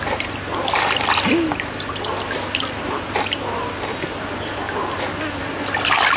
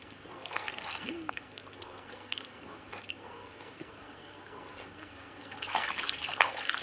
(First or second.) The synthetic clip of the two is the second